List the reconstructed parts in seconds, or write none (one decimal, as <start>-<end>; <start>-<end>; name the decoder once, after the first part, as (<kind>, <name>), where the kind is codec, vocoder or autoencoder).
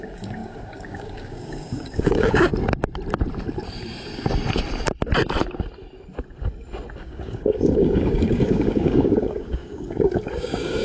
0.0-2.5 (codec, DAC); 7.0-10.8